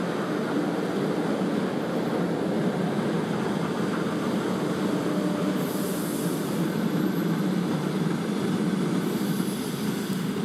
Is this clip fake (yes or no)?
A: no